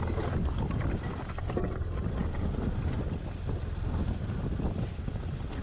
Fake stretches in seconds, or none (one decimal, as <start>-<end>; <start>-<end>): none